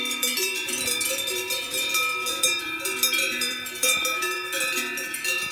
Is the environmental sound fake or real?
fake